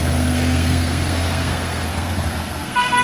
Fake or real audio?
fake